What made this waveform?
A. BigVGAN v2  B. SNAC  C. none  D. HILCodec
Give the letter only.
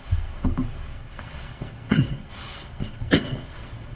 B